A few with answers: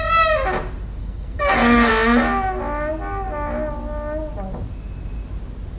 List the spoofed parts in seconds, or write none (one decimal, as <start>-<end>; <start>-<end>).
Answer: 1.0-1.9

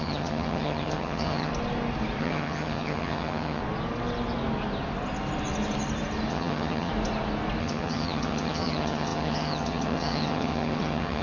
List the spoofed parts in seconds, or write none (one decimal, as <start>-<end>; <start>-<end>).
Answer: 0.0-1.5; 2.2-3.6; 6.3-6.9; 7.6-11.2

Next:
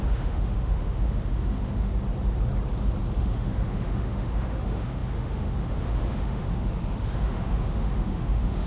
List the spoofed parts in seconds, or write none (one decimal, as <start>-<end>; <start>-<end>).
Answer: 0.0-1.9; 3.2-8.7

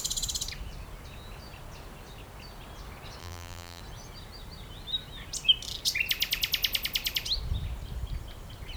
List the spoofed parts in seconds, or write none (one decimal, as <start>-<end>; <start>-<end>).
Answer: 3.2-3.8